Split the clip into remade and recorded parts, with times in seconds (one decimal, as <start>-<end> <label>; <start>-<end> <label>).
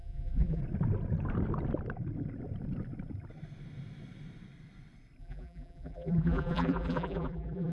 0.0-0.6 remade; 0.6-5.2 recorded; 5.2-7.7 remade